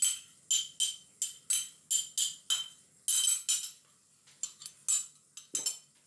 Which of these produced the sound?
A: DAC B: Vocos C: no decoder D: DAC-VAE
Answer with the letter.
C